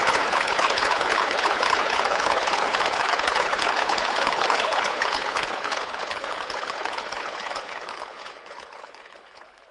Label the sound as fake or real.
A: fake